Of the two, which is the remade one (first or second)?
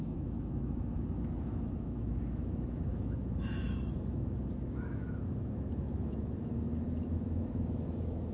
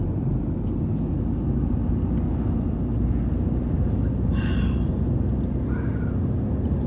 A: first